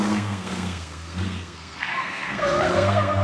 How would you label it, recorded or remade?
remade